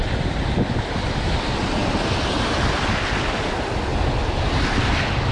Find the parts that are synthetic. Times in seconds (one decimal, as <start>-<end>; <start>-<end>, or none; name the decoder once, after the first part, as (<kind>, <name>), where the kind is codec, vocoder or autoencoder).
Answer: none